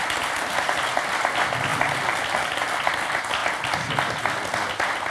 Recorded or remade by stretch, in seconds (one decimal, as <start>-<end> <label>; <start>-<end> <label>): 0.0-5.1 recorded